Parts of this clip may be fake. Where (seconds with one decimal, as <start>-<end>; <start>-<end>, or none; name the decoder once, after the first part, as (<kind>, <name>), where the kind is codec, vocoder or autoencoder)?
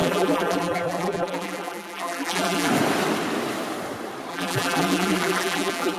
0.0-2.7 (vocoder, BigVGAN v2); 4.3-6.0